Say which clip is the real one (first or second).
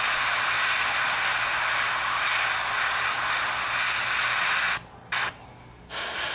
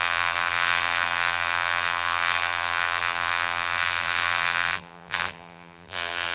first